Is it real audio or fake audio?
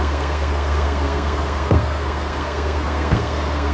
fake